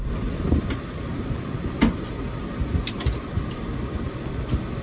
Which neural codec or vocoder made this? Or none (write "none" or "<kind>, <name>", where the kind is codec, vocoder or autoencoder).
vocoder, BigVGAN v2